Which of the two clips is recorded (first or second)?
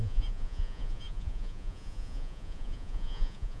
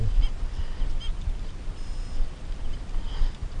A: second